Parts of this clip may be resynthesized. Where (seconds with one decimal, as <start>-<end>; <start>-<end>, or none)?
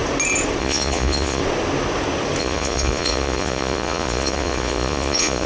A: 0.6-1.4; 2.4-5.5